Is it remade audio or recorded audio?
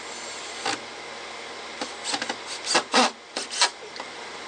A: recorded